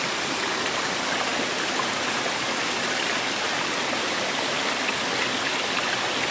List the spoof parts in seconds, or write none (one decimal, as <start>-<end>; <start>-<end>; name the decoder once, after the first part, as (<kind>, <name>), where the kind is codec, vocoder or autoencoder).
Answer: none